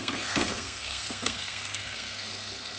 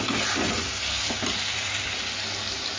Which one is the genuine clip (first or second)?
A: second